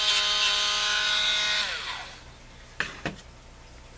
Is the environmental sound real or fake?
real